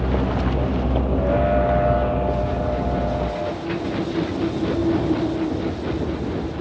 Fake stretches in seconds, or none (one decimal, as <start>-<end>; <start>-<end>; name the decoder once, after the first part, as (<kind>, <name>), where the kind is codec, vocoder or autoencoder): none